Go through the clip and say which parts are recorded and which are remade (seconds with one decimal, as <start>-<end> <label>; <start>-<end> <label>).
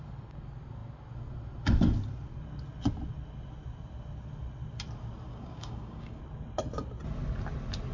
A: 0.0-5.3 recorded; 5.3-6.2 remade; 6.2-7.9 recorded